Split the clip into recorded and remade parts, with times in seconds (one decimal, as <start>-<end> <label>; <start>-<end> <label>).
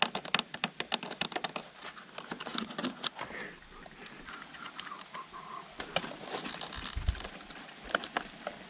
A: 0.0-8.7 recorded